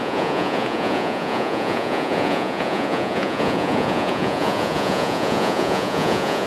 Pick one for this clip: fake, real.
fake